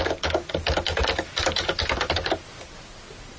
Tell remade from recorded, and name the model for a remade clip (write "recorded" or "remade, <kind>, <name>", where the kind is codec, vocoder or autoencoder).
recorded